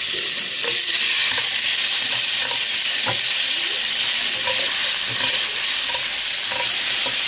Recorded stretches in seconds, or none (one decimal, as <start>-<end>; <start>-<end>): 0.0-7.3